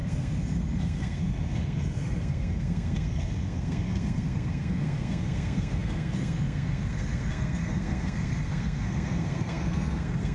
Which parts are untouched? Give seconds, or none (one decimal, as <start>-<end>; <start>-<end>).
none